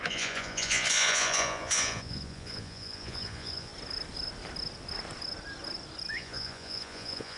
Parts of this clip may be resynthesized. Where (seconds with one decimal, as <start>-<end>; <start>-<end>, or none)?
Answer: 0.0-3.7; 6.1-7.4